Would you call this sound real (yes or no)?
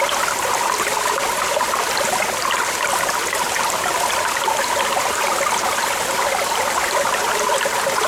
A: yes